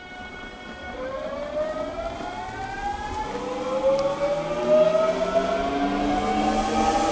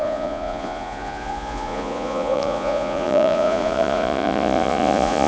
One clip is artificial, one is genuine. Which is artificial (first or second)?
second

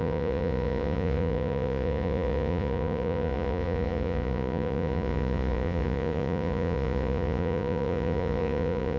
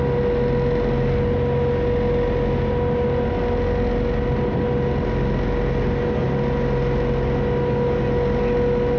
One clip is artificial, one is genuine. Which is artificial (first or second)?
first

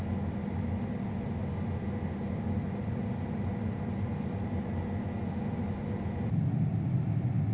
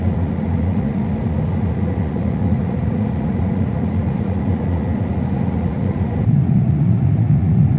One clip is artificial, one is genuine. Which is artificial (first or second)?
second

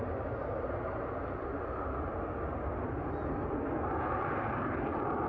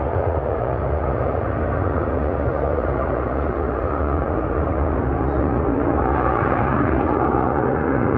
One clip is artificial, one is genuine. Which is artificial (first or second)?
second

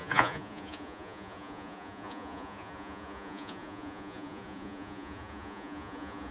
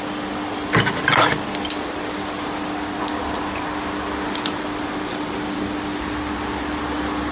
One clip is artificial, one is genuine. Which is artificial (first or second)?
first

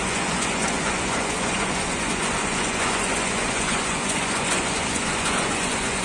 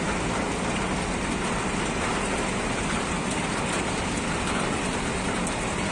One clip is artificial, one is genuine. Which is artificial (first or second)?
first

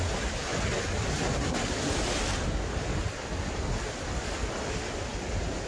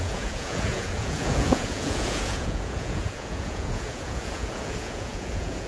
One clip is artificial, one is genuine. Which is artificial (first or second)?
second